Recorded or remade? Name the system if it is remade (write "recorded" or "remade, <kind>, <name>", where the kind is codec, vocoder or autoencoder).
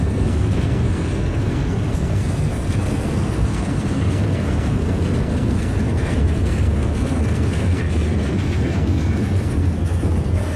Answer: remade, codec, SNAC